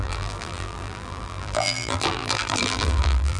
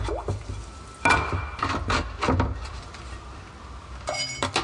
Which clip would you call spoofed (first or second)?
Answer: first